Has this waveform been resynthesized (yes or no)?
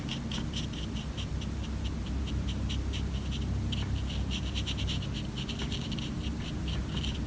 no